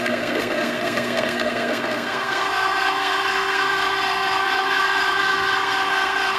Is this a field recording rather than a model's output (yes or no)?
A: no